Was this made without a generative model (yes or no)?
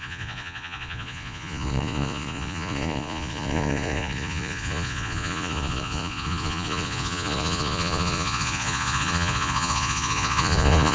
no